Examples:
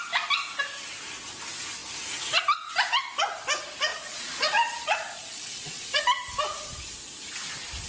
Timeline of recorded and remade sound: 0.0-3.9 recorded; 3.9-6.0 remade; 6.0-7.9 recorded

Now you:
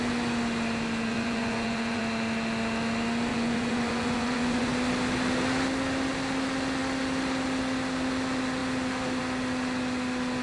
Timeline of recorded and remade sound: 0.0-1.1 recorded; 1.1-2.0 remade; 2.0-3.3 recorded; 3.3-4.7 remade; 4.7-10.4 recorded